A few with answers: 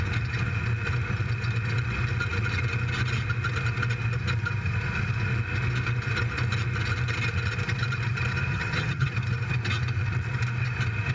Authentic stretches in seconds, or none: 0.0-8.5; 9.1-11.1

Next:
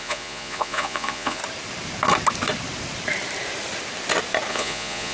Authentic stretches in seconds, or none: 1.4-4.5

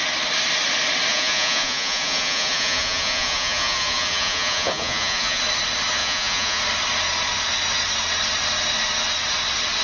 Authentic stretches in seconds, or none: 0.0-1.1; 5.4-6.0; 6.6-9.8

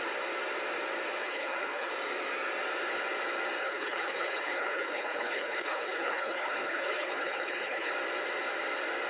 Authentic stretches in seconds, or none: 0.0-1.2; 1.9-3.6; 7.9-9.1